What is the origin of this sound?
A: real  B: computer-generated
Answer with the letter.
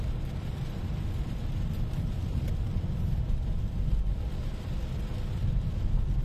B